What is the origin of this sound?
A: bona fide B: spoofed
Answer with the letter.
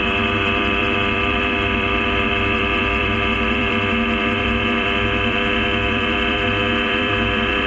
B